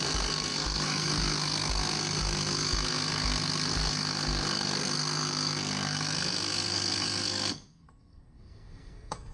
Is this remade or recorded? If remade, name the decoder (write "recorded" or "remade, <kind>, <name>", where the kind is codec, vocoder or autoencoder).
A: remade, codec, SNAC